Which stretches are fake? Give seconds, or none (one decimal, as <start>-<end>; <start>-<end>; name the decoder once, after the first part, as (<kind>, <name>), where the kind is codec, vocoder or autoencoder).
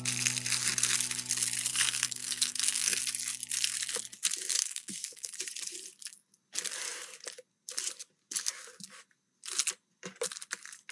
1.7-3.0 (codec, SNAC); 4.6-5.3